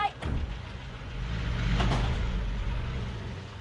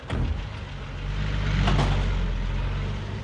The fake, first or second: first